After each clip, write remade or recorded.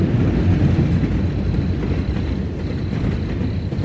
recorded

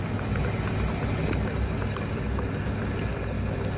recorded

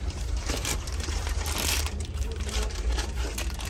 remade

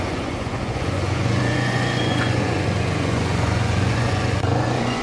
remade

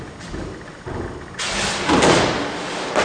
recorded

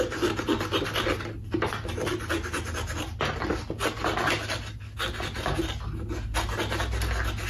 recorded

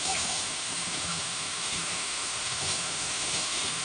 remade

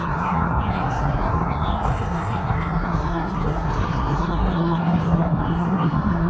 remade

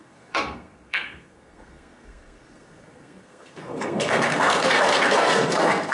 remade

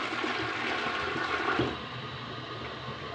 recorded